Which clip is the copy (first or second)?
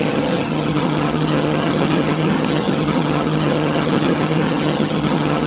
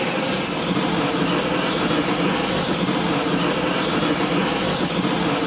first